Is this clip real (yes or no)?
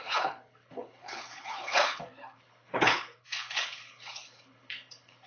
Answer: no